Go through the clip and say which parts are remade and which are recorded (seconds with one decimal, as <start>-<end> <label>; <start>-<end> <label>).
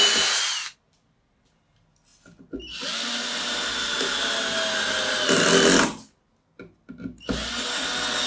0.0-8.3 recorded